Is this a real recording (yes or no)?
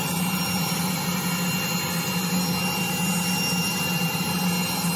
yes